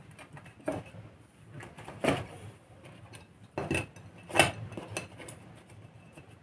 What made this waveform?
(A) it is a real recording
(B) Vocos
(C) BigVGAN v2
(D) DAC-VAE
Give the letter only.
A